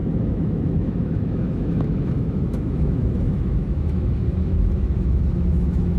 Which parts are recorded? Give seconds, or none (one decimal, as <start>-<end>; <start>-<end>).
none

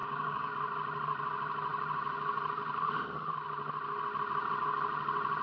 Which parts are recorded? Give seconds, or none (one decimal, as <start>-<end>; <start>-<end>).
0.5-5.4

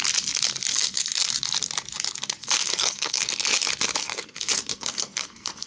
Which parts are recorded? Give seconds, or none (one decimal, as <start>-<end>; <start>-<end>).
0.0-0.7; 1.3-2.4; 3.3-4.0

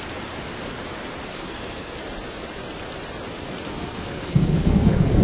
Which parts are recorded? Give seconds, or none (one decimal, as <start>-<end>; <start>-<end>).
0.0-1.3; 1.9-3.7

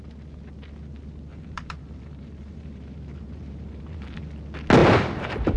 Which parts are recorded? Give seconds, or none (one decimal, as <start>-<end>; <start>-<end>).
0.0-1.3; 4.2-4.8

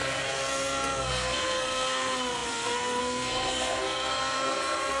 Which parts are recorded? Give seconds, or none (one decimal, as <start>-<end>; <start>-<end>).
none

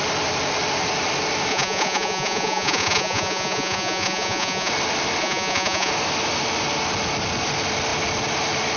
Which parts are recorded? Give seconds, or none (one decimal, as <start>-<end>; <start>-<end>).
0.0-1.5; 4.7-5.2; 5.9-8.8